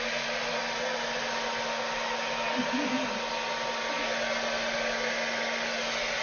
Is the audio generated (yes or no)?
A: no